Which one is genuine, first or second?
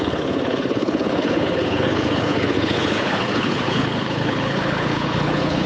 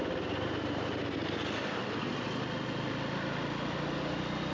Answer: second